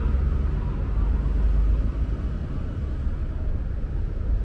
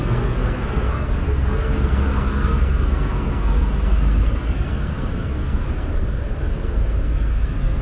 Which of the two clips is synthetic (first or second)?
second